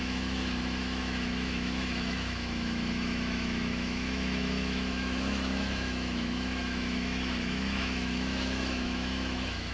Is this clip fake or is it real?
fake